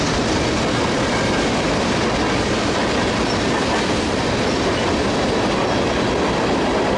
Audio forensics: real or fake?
real